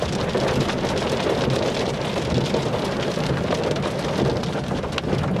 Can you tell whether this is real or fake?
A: real